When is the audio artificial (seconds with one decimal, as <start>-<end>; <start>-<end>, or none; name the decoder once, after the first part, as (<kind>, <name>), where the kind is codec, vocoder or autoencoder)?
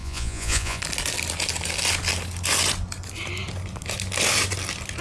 0.0-0.8 (vocoder, Vocos)